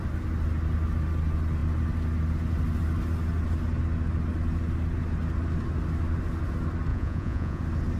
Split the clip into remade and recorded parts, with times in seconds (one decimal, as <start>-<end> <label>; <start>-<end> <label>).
0.0-6.9 recorded; 6.9-7.6 remade; 7.6-8.0 recorded